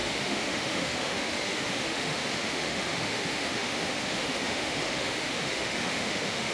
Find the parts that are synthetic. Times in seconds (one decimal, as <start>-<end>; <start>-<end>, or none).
0.0-6.5